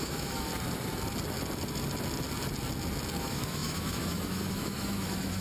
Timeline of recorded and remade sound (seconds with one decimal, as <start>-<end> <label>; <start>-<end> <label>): 0.0-0.5 remade; 0.5-3.2 recorded; 3.2-5.4 remade